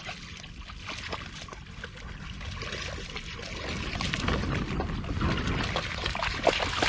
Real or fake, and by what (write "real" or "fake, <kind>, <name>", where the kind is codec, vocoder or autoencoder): real